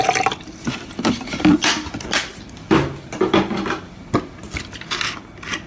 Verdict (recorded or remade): recorded